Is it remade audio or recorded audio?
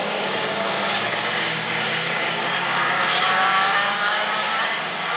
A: remade